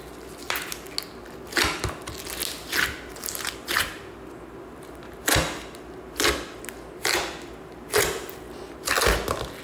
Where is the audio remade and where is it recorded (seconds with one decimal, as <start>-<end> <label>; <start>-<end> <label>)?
0.0-9.6 recorded